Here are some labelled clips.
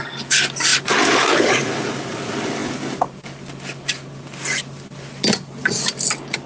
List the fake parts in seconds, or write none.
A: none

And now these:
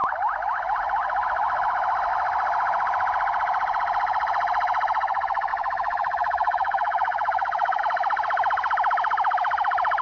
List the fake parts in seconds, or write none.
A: 5.5-7.8 (vocoder, Vocos)

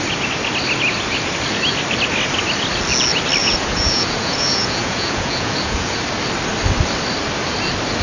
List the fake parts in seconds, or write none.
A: 3.4-6.0 (vocoder, Vocos)

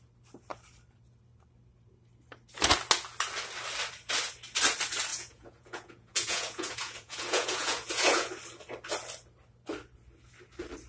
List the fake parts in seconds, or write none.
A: 5.1-8.3 (vocoder, Vocos)

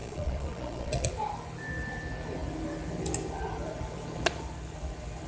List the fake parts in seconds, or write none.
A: 0.0-1.1 (vocoder, Vocos)